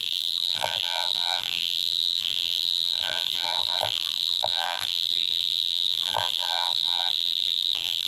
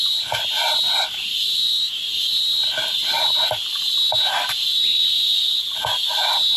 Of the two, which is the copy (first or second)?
first